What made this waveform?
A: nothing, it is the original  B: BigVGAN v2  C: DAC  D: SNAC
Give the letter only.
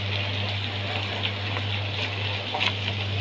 A